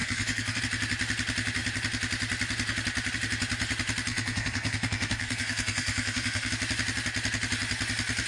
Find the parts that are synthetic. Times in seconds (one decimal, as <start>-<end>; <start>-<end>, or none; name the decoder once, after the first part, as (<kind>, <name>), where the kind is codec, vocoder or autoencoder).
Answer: 0.0-0.6 (codec, SNAC); 4.1-6.5